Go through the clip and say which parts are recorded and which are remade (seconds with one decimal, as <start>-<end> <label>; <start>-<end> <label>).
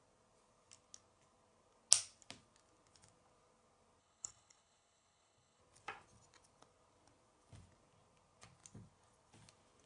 0.0-4.0 recorded; 4.0-5.6 remade; 5.6-9.9 recorded